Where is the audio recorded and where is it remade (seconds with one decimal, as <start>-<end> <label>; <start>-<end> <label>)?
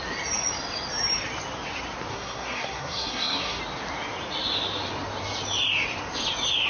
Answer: 0.0-2.1 recorded; 2.1-3.6 remade; 3.6-6.7 recorded